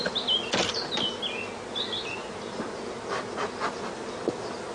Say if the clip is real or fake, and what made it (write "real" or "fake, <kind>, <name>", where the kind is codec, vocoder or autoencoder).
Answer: real